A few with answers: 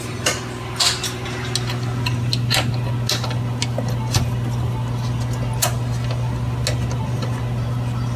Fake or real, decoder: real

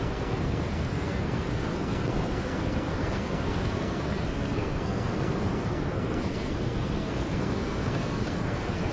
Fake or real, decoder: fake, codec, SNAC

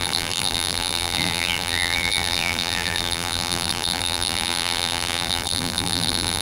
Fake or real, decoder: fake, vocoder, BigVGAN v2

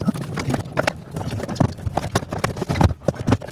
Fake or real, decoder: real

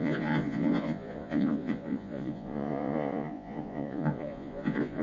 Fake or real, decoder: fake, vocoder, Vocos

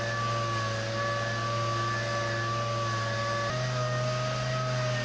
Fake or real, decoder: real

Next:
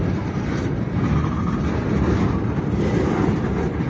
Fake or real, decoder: real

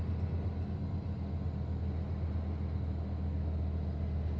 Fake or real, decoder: real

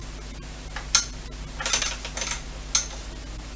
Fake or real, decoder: real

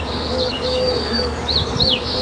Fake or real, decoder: fake, codec, DAC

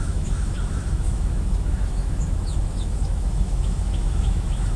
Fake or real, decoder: fake, autoencoder, DAC-VAE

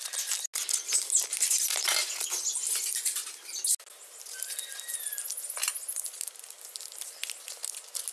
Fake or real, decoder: real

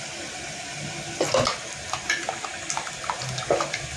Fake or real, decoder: real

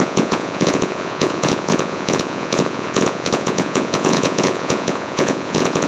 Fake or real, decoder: fake, vocoder, Vocos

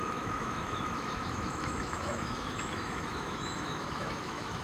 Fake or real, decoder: fake, autoencoder, DAC-VAE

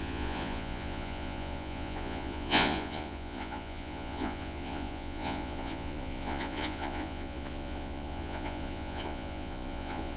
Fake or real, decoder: fake, vocoder, Vocos